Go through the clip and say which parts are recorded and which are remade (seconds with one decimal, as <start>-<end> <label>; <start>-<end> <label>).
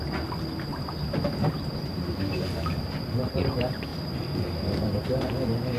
0.0-0.7 recorded; 0.7-3.2 remade; 3.2-3.9 recorded; 3.9-5.3 remade; 5.3-5.8 recorded